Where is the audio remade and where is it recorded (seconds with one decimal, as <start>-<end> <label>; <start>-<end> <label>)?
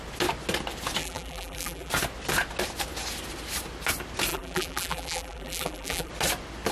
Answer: 0.0-1.0 recorded; 1.0-1.9 remade; 1.9-4.3 recorded; 4.3-6.1 remade; 6.1-6.7 recorded